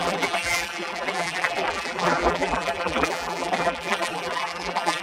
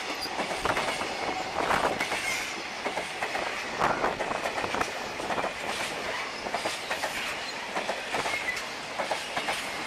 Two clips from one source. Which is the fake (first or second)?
first